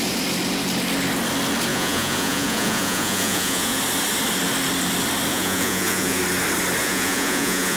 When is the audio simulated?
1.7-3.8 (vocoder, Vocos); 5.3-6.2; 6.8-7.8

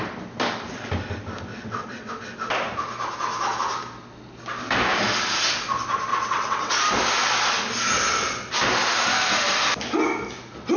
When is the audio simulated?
1.5-2.1 (vocoder, WaveNeXt); 6.1-6.7